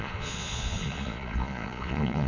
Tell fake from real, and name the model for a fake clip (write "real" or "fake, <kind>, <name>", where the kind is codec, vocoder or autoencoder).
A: fake, vocoder, Vocos